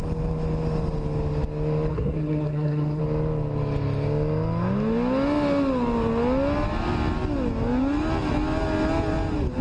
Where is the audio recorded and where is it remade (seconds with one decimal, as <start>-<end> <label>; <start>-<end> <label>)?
0.0-1.9 recorded; 1.9-3.0 remade; 3.0-9.6 recorded